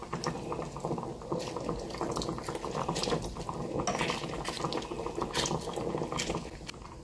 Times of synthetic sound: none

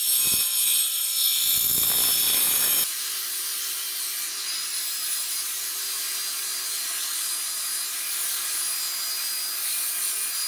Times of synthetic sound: none

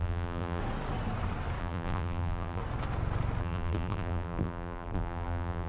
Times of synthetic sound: 0.0-0.6 (vocoder, BigVGAN v2); 1.6-2.6; 3.4-5.7

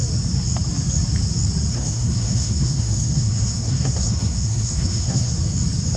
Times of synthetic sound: 1.7-5.3 (codec, SNAC)

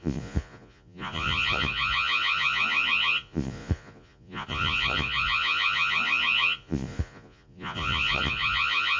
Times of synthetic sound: 0.0-9.0 (vocoder, Vocos)

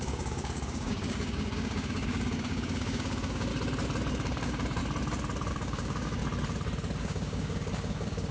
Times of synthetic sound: 0.0-3.5 (codec, DAC); 4.1-4.8; 5.5-6.2; 7.0-8.3